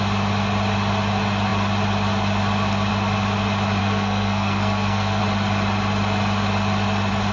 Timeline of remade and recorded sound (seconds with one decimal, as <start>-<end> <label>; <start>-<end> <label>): 0.0-3.8 recorded; 3.8-5.2 remade; 5.2-7.3 recorded